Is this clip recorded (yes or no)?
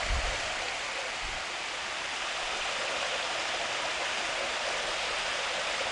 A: yes